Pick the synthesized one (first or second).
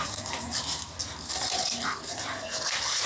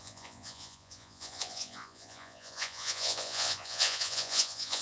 second